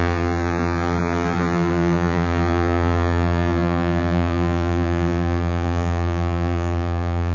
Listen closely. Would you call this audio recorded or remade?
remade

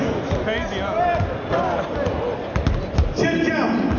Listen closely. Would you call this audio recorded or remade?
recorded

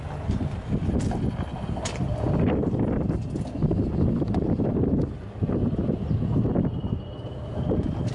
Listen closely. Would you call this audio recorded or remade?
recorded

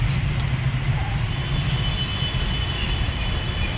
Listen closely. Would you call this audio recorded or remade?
recorded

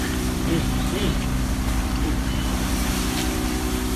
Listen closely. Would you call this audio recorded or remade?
remade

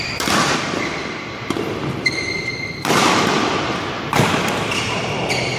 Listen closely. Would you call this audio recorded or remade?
remade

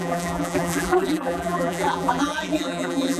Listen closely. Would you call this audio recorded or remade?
remade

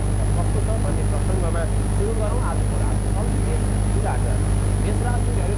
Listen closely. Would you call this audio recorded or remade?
recorded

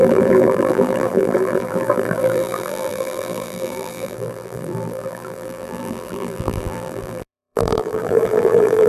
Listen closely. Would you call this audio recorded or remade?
remade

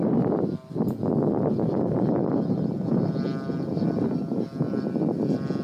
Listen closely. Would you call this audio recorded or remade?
recorded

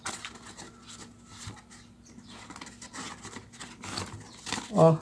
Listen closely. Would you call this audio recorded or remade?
recorded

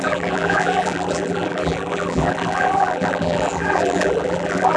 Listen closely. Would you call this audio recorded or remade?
remade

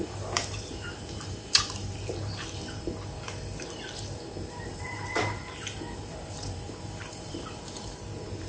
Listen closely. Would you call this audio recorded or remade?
remade